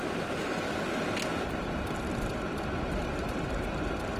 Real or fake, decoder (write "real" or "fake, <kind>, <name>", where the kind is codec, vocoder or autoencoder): real